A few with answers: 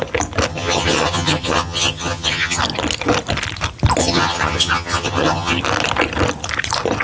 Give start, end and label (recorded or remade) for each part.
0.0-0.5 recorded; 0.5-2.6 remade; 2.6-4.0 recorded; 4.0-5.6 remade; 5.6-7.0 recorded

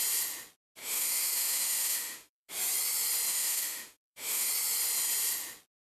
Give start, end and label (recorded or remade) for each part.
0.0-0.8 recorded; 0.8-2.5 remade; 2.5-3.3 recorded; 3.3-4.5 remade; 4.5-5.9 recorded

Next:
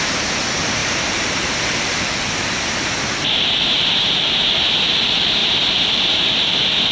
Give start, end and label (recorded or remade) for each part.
0.0-0.8 recorded; 0.8-4.1 remade; 4.1-5.4 recorded; 5.4-6.2 remade; 6.2-6.9 recorded